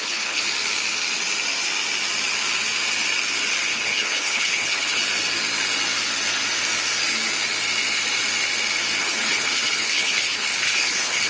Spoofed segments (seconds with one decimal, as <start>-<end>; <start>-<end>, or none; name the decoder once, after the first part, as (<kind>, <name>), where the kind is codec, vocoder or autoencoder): 0.0-0.4 (codec, HILCodec); 3.7-5.0; 9.0-11.3